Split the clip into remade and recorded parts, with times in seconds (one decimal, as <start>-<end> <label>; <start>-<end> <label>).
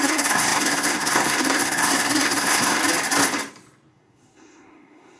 0.0-2.8 remade; 2.8-3.9 recorded; 3.9-5.2 remade